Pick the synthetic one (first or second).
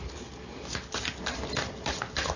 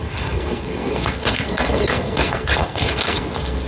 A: second